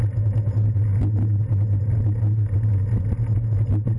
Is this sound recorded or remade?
recorded